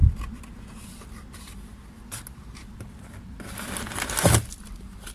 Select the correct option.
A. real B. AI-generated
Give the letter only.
A